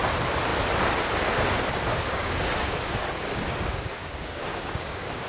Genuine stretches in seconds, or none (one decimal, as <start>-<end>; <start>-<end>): 0.0-1.9